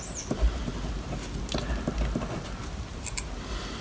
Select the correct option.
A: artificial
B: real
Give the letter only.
B